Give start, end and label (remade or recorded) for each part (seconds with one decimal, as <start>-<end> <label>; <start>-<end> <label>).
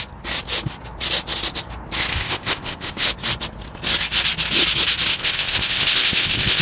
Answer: 0.0-2.1 recorded; 2.1-3.1 remade; 3.1-5.1 recorded; 5.1-6.6 remade